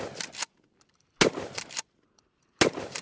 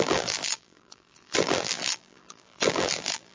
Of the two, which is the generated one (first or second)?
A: second